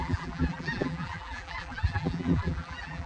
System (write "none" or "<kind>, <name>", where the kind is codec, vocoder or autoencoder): vocoder, BigVGAN v2